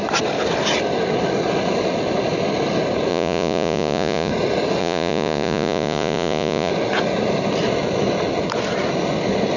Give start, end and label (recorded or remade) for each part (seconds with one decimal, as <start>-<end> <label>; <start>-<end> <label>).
0.0-3.1 recorded; 3.1-4.3 remade; 4.3-4.8 recorded; 4.8-6.7 remade; 6.7-9.6 recorded